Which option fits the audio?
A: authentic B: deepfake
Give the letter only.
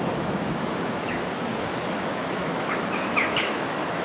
B